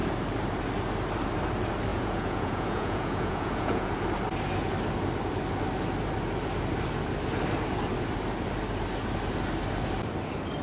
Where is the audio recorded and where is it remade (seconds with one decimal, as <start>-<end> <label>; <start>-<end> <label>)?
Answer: 0.0-1.9 recorded; 1.9-3.9 remade; 3.9-10.6 recorded

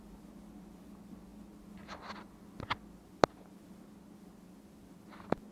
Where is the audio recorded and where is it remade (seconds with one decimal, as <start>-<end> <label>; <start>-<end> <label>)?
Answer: 0.0-5.5 recorded

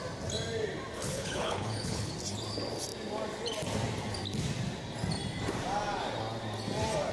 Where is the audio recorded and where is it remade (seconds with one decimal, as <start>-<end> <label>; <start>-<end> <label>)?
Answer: 0.0-1.0 recorded; 1.0-2.1 remade; 2.1-7.1 recorded

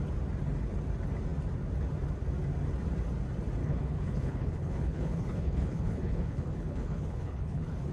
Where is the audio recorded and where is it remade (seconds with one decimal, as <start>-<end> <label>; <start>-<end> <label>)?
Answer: 0.0-3.6 recorded; 3.6-7.9 remade

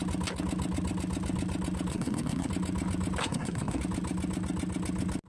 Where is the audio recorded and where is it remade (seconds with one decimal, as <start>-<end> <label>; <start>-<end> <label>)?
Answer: 0.0-1.9 recorded; 1.9-2.5 remade; 2.5-3.2 recorded; 3.2-3.8 remade; 3.8-5.3 recorded

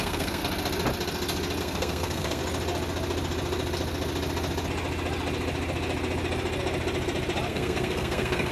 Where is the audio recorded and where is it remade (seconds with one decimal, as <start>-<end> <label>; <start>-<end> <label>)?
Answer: 0.0-0.4 remade; 0.4-1.6 recorded; 1.6-2.4 remade; 2.4-7.5 recorded; 7.5-8.5 remade

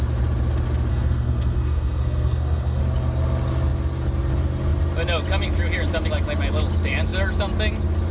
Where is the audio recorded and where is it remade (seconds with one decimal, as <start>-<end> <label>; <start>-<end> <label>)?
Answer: 0.0-0.9 recorded; 0.9-2.8 remade; 2.8-8.1 recorded